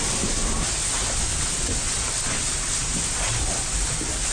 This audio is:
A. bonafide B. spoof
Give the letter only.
A